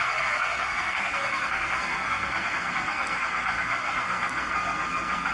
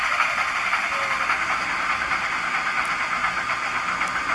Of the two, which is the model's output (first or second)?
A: first